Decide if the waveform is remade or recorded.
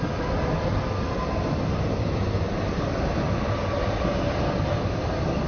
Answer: recorded